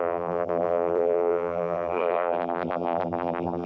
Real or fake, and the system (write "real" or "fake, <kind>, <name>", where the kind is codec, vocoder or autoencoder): fake, vocoder, BigVGAN v2